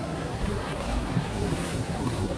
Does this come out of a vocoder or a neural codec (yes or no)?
yes